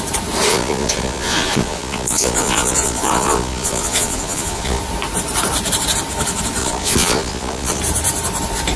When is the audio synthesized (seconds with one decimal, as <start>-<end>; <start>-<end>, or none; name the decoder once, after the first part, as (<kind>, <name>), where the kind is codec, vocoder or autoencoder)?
0.5-4.8 (vocoder, Vocos); 6.6-7.8